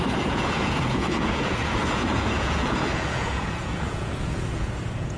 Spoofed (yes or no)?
yes